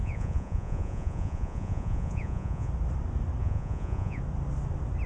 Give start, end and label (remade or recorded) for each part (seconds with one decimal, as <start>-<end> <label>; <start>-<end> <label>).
0.0-2.7 remade; 2.7-3.4 recorded; 3.4-4.2 remade; 4.2-5.1 recorded